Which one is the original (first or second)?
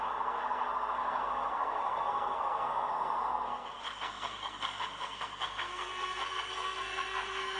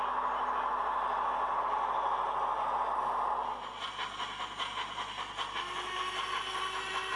second